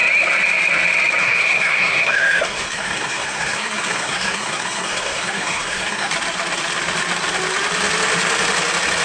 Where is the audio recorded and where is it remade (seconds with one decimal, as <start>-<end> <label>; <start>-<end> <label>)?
0.0-1.2 recorded; 1.2-6.1 remade; 6.1-9.0 recorded